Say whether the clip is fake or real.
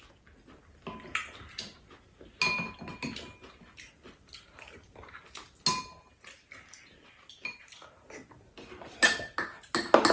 real